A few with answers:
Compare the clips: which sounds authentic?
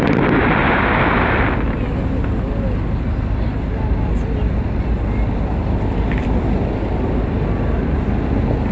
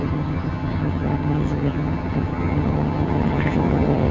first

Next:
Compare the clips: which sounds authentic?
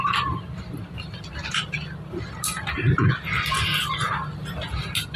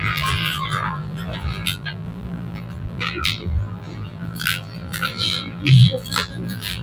first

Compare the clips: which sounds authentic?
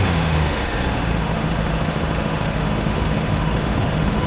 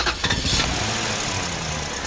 second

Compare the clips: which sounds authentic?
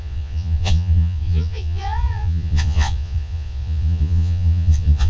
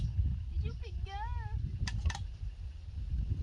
second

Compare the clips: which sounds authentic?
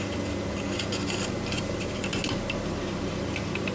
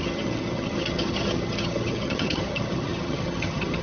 first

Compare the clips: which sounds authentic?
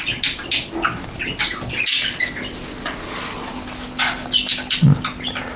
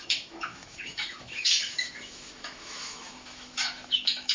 first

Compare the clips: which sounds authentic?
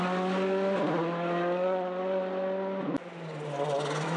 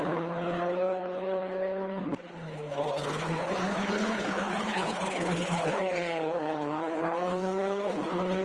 first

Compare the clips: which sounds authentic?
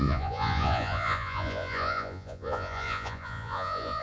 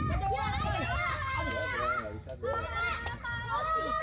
second